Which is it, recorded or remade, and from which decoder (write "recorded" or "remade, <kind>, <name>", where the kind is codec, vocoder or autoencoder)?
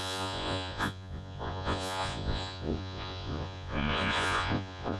remade, vocoder, Vocos